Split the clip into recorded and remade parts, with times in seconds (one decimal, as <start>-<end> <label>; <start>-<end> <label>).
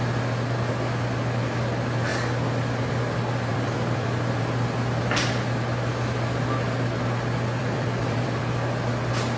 0.0-3.5 recorded; 3.5-4.4 remade; 4.4-7.6 recorded; 7.6-8.4 remade; 8.4-9.4 recorded